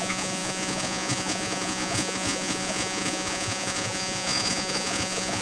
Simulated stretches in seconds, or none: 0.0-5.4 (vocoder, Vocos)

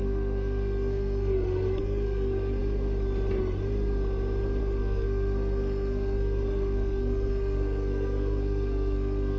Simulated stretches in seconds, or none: 0.0-2.6 (codec, SNAC); 4.6-9.4